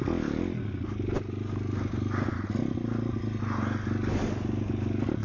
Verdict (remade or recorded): recorded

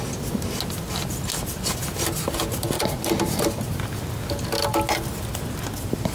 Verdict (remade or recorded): recorded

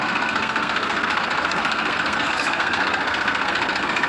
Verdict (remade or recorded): remade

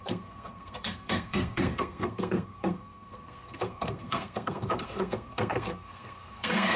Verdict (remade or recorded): remade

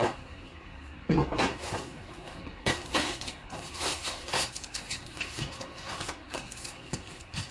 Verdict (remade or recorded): remade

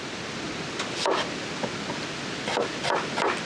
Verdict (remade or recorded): recorded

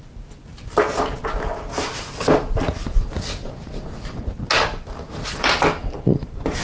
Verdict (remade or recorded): recorded